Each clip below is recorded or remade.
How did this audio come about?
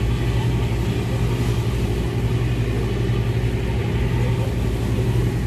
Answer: recorded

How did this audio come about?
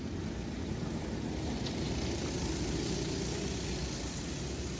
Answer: recorded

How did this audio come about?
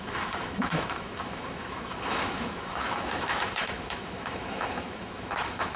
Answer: remade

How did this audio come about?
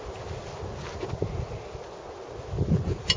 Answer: recorded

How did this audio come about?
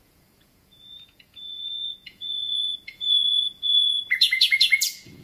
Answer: remade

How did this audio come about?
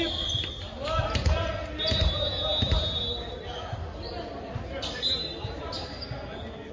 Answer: recorded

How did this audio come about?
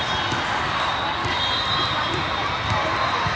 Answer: recorded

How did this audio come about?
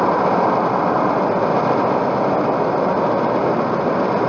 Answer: recorded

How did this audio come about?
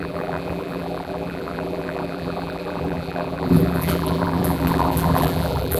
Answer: remade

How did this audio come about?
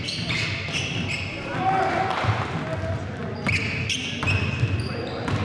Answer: recorded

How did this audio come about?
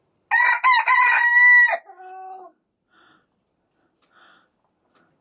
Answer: recorded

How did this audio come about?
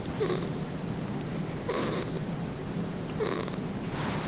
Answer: remade